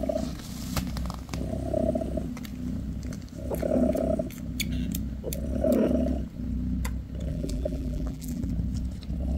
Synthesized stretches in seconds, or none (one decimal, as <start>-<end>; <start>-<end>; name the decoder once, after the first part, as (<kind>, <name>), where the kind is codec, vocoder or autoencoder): 7.3-8.5 (vocoder, BigVGAN v2)

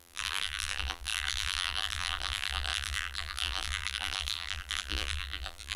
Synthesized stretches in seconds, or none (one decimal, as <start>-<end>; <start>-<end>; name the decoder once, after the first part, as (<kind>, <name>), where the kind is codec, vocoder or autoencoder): 0.0-5.8 (vocoder, BigVGAN v2)

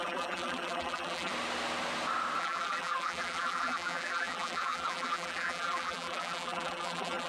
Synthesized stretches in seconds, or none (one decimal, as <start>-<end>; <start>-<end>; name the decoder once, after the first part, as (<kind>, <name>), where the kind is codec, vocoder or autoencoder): 0.0-1.3 (vocoder, BigVGAN v2); 2.4-7.3